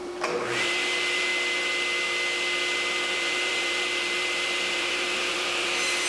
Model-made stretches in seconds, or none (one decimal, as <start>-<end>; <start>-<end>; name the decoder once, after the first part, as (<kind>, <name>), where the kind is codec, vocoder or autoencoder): 0.0-1.3 (vocoder, BigVGAN v2); 3.1-6.1